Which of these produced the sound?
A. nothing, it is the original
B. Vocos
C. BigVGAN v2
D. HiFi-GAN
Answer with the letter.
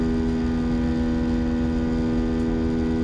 A